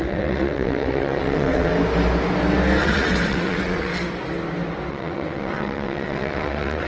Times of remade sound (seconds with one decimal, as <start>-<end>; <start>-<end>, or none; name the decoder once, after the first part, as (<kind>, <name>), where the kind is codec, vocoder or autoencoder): 0.0-1.7 (vocoder, WaveNeXt); 2.8-3.9; 4.9-6.9